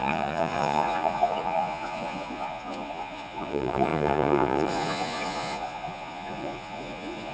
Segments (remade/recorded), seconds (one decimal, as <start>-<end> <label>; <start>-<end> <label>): 0.0-7.3 remade